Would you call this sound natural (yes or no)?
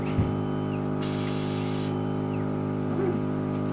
yes